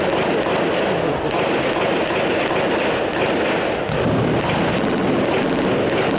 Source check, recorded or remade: recorded